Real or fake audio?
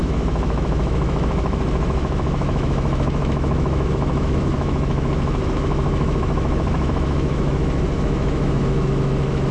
fake